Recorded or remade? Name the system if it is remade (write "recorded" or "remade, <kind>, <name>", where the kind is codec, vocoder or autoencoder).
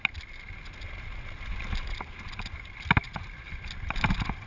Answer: recorded